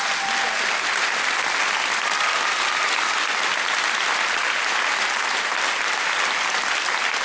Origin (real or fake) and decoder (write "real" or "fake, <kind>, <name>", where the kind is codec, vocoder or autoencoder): real